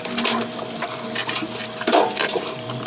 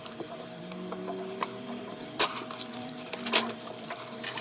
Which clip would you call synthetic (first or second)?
second